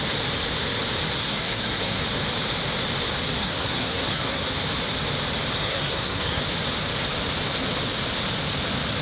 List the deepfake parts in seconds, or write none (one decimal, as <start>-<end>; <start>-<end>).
1.2-2.0; 3.4-4.4; 5.6-6.4

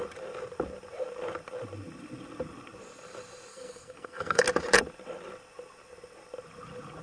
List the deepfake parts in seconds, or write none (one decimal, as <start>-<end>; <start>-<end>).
3.5-4.4

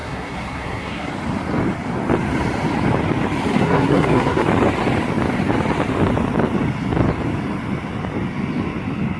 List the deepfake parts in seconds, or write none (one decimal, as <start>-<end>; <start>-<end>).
0.0-1.1; 3.5-4.5

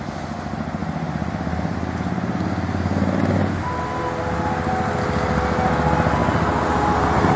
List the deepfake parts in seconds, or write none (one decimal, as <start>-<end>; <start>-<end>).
none

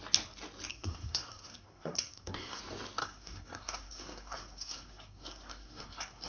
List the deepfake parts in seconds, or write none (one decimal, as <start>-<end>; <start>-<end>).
0.7-2.6; 3.0-6.3

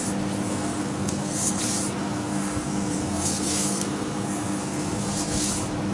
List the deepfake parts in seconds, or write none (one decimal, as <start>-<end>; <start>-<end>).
0.5-1.6; 2.0-5.5

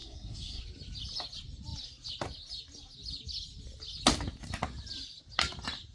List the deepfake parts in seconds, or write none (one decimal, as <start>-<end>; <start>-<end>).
0.0-0.6

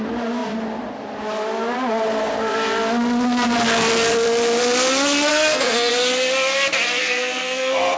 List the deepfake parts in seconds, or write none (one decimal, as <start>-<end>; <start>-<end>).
5.3-5.9; 7.0-8.0